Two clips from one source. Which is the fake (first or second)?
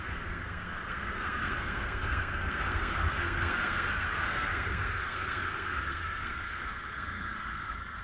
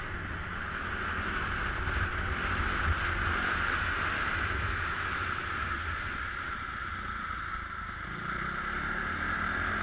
first